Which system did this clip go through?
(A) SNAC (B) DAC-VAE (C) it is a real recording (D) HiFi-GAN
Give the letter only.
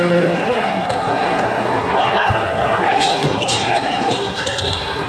A